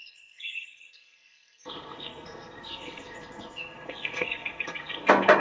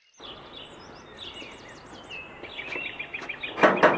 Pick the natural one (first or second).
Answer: second